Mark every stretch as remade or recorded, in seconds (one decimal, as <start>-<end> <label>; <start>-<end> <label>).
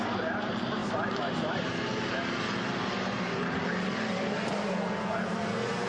0.0-1.9 remade; 1.9-2.9 recorded; 2.9-3.6 remade; 3.6-5.2 recorded; 5.2-5.9 remade